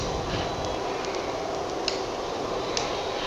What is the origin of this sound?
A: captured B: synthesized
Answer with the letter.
A